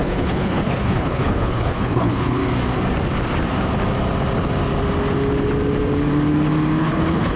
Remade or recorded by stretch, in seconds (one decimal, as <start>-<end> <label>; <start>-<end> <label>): 0.0-2.4 remade; 2.4-6.8 recorded; 6.8-7.4 remade